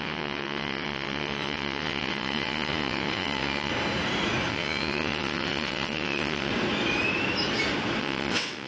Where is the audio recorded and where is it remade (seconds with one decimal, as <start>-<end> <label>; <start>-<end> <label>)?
0.0-3.7 remade; 3.7-4.5 recorded; 4.5-6.5 remade; 6.5-8.0 recorded; 8.0-8.7 remade